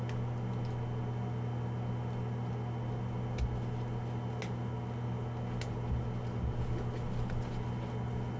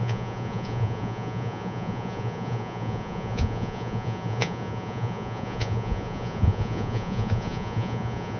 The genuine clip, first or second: first